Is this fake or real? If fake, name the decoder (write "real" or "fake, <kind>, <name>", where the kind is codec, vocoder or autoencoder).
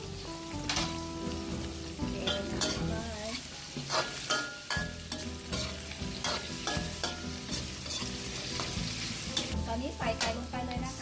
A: real